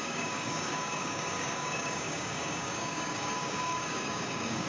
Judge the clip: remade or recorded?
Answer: remade